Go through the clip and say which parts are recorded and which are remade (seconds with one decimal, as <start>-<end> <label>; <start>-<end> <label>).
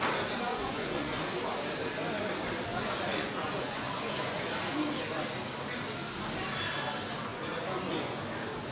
0.0-0.5 recorded; 0.5-1.2 remade; 1.2-2.7 recorded; 2.7-4.4 remade; 4.4-7.3 recorded; 7.3-8.2 remade; 8.2-8.7 recorded